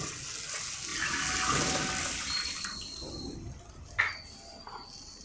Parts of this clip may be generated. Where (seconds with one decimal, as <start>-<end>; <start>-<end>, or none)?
none